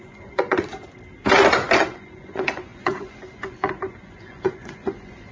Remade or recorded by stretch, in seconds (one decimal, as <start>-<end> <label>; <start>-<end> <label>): 0.0-0.7 remade; 0.7-1.9 recorded; 1.9-5.3 remade